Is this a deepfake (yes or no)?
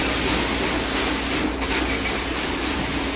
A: no